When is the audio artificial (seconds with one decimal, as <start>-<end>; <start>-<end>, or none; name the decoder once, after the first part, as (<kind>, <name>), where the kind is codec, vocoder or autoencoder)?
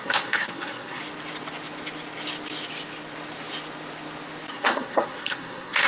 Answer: 0.0-1.0 (codec, SNAC); 4.5-5.9